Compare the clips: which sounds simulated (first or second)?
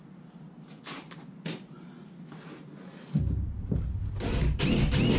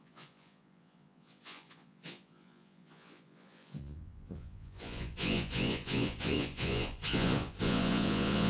second